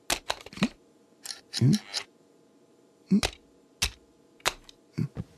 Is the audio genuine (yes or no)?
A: yes